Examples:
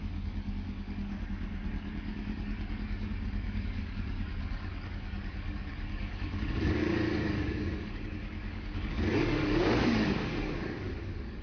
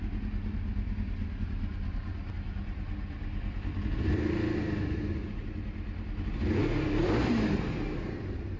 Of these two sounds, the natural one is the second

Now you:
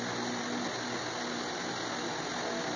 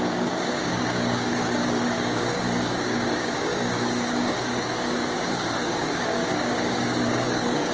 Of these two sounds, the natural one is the first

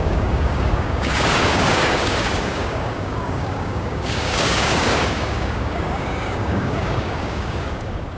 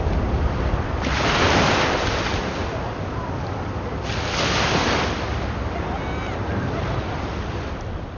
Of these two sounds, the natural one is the second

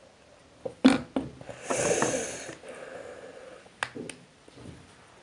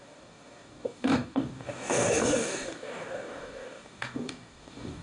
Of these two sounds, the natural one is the first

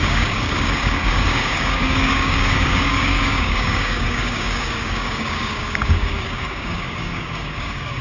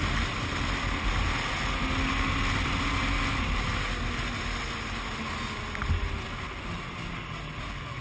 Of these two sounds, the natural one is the second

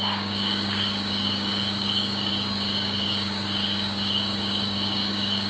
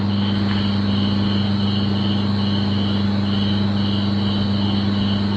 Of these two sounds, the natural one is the second